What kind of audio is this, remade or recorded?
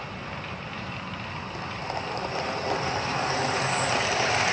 recorded